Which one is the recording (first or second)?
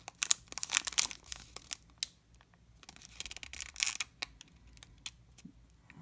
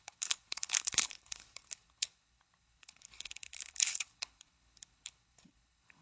first